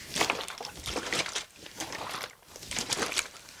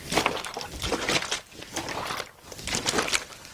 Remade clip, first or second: first